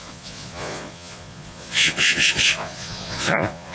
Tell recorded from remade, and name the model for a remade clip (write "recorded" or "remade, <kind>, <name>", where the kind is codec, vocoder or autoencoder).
remade, vocoder, Vocos